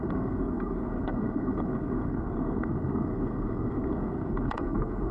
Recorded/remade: remade